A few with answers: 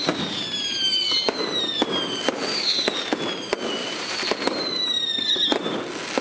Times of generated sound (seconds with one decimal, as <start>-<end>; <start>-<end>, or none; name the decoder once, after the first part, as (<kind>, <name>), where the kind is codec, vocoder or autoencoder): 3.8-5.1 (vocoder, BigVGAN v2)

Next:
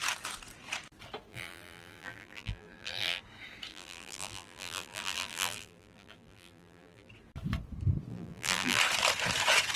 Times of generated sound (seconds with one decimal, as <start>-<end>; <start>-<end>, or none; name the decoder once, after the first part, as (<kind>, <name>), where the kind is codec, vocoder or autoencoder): 1.3-3.2 (vocoder, BigVGAN v2); 3.7-7.1; 8.1-8.8

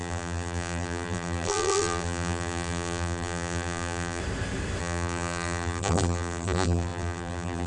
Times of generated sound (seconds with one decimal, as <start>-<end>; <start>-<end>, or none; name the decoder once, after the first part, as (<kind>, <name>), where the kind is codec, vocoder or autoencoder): 0.0-4.2 (vocoder, BigVGAN v2); 4.8-7.7

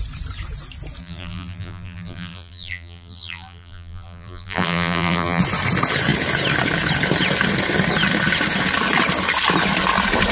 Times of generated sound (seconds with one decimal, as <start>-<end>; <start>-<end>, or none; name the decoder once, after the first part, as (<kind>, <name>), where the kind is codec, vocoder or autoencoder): 1.0-5.4 (vocoder, BigVGAN v2)

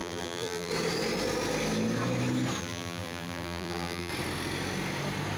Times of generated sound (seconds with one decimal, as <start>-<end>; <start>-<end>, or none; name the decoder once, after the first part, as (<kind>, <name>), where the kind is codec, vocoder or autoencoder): 0.0-0.7 (vocoder, BigVGAN v2); 2.6-4.1

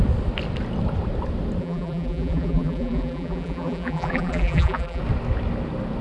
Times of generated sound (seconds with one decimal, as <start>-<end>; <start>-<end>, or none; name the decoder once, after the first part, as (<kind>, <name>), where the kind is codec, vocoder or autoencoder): 1.6-5.0 (vocoder, BigVGAN v2)

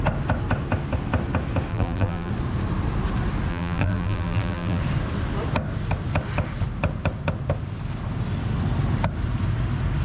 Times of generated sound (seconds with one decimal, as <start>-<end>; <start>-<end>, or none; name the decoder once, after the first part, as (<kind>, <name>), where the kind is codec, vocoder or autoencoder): 1.7-2.3 (vocoder, BigVGAN v2); 3.5-4.8